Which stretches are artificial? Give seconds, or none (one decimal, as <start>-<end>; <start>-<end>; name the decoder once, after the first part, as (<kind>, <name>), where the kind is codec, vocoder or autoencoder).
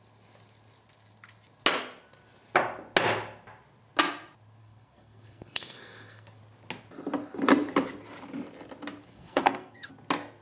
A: 4.6-6.4 (codec, SNAC); 9.1-9.9